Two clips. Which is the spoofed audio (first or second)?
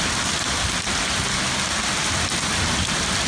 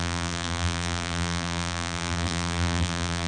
second